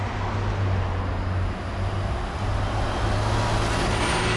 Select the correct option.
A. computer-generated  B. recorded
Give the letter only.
B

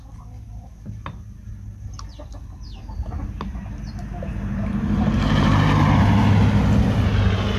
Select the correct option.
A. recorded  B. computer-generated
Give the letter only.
A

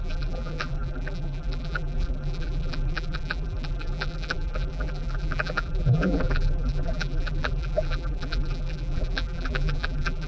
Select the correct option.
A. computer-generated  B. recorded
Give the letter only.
A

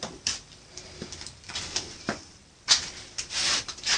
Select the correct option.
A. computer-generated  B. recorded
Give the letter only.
A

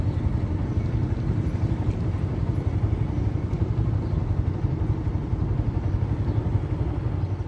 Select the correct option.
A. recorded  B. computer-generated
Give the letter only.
A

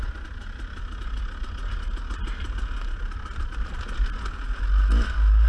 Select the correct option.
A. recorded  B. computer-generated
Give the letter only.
A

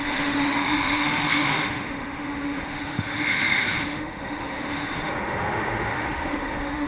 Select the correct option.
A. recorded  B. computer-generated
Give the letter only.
B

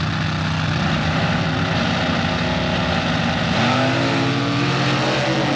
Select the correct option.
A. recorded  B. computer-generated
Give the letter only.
A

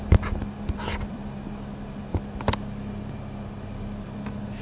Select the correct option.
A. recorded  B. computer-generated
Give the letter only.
A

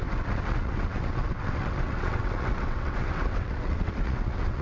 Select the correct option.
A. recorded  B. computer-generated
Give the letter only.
B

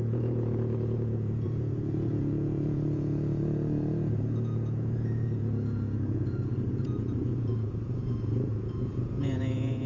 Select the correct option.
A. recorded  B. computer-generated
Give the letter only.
B